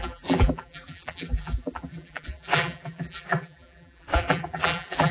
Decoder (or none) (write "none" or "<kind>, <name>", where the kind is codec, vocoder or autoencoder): vocoder, BigVGAN v2